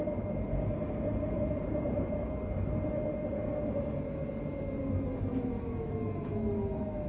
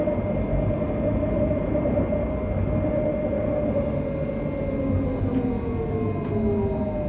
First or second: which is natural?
second